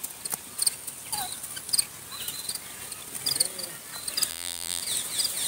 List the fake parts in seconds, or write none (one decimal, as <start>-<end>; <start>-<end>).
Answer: 4.3-4.8